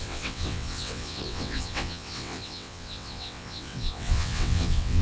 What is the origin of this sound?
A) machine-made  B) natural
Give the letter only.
A